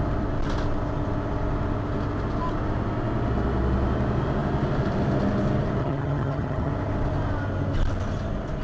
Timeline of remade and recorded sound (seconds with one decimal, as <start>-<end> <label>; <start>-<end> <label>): 0.0-5.8 recorded; 5.8-6.7 remade; 6.7-8.6 recorded